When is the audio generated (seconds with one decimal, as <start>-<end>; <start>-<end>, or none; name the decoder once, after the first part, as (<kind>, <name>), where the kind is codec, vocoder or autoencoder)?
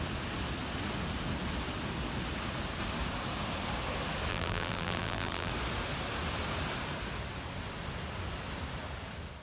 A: 4.3-5.5 (vocoder, BigVGAN v2)